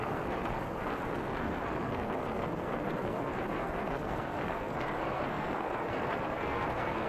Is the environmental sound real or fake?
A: fake